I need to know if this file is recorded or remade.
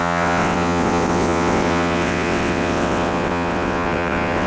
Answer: remade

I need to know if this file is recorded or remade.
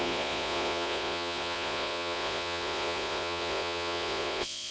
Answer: remade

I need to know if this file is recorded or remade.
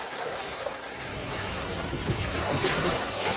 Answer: remade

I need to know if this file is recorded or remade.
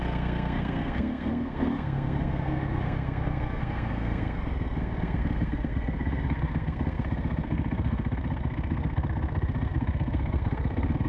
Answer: remade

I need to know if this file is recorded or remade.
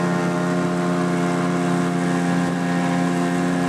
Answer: recorded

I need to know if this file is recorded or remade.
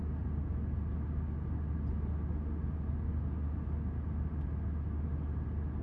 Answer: recorded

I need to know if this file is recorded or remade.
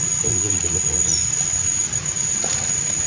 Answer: remade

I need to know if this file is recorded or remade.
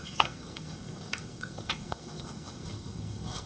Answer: remade